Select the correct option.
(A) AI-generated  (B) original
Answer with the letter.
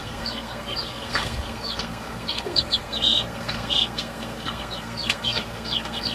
A